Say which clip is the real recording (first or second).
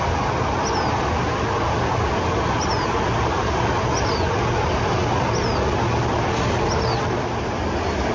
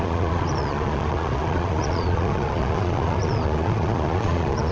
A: first